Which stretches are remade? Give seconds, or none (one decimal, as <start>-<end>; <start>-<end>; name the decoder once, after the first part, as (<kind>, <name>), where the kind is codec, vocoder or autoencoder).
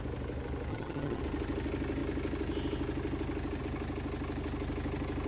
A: 0.7-1.2 (vocoder, HiFi-GAN)